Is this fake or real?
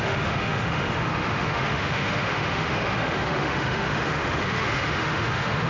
fake